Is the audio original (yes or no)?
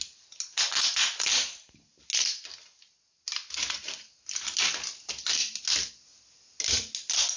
yes